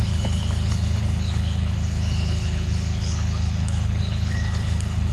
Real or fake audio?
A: fake